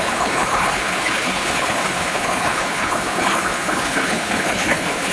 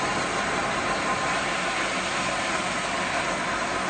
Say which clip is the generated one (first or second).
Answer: first